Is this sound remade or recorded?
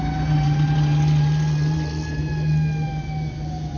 recorded